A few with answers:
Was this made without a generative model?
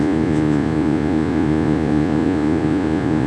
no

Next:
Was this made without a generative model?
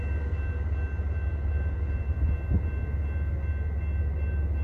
yes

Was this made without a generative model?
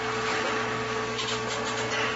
yes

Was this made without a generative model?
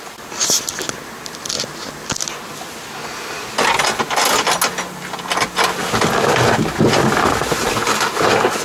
yes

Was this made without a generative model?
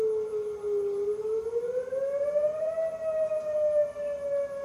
yes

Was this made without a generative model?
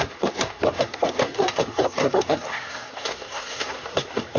no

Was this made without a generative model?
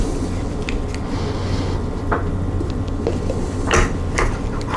yes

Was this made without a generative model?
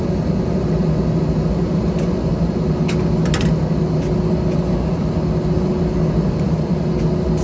yes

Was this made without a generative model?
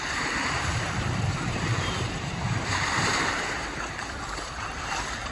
no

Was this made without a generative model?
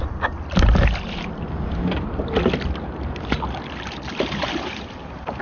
yes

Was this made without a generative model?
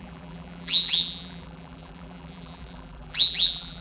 no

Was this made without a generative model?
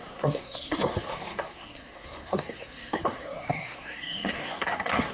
no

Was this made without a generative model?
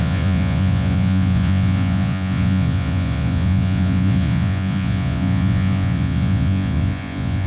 no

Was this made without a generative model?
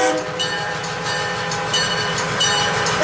no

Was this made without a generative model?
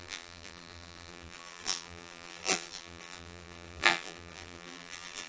no